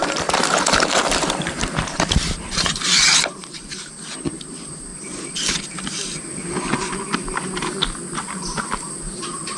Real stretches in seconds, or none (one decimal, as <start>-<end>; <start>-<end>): 3.3-4.3; 4.9-8.9